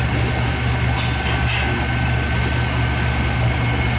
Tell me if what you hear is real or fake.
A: real